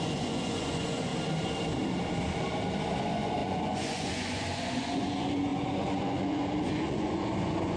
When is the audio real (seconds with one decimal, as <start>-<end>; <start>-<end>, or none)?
1.1-3.0